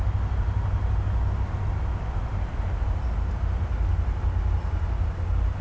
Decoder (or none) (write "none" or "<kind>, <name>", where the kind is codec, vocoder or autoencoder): none